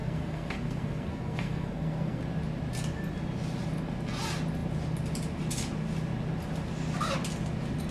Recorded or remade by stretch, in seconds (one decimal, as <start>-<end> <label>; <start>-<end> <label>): 0.0-2.2 remade; 2.2-7.9 recorded